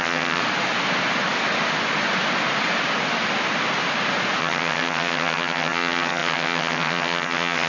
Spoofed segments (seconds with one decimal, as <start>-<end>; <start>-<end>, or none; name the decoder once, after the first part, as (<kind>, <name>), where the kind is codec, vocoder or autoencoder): 0.0-0.4 (vocoder, HiFi-GAN); 4.4-7.7